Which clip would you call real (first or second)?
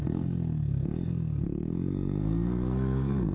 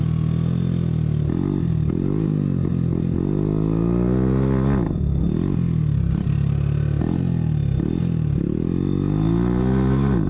second